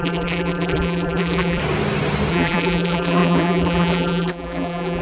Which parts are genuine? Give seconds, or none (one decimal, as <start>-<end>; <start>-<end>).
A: 1.6-2.3